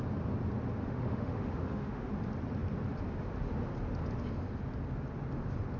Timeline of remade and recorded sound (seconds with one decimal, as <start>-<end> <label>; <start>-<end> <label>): 0.0-0.8 recorded; 0.8-2.1 remade; 2.1-5.8 recorded